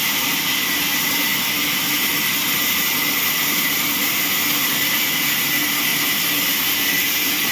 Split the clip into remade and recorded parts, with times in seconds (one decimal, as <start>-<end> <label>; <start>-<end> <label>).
0.0-7.5 recorded